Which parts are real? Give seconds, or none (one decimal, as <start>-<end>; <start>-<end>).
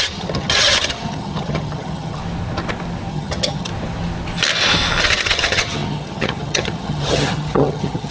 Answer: 2.2-3.1; 3.7-5.0